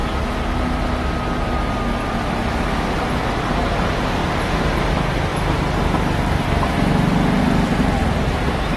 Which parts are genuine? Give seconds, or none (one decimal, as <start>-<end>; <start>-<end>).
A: 0.0-8.8